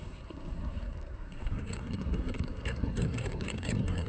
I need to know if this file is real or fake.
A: fake